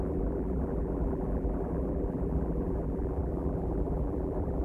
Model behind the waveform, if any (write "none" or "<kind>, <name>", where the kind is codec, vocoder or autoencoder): vocoder, BigVGAN v2